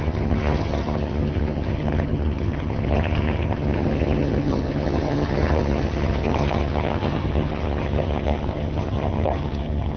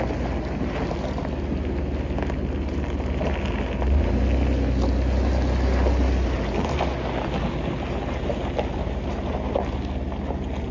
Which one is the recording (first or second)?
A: second